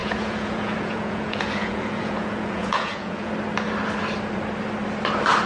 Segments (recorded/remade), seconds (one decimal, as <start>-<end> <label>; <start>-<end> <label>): 0.0-3.3 remade; 3.3-5.5 recorded